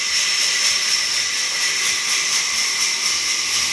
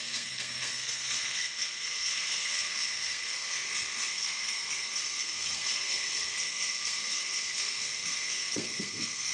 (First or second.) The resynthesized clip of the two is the second